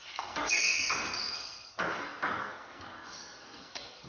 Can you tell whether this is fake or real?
fake